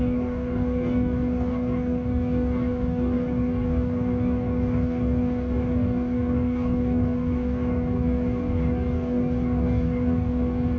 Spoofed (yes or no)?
yes